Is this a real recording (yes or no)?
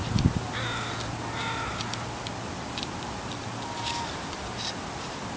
no